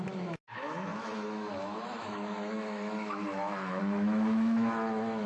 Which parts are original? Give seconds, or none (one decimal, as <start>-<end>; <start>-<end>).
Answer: none